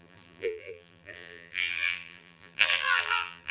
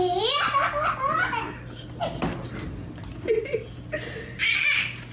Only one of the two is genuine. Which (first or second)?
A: second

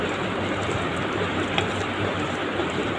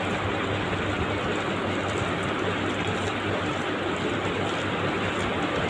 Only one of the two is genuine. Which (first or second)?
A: second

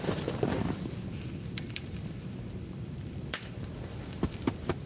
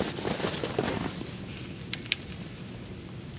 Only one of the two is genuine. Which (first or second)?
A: second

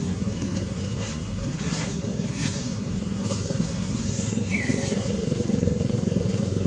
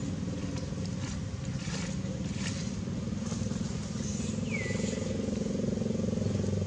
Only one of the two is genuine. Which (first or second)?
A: second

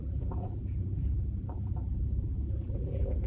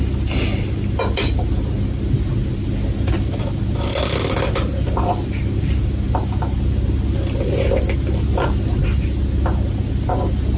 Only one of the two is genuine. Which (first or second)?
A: second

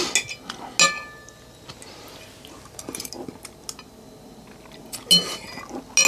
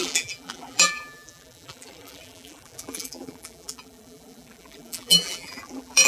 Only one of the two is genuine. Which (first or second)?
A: first